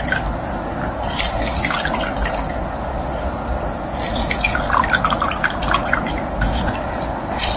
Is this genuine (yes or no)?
yes